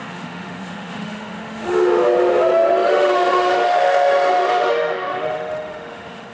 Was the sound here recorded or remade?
remade